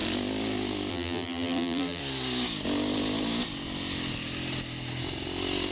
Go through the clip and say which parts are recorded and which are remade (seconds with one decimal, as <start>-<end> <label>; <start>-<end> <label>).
0.0-0.9 recorded; 0.9-2.0 remade; 2.0-5.7 recorded